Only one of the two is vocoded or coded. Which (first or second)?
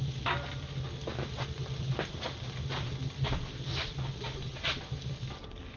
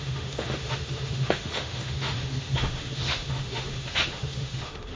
second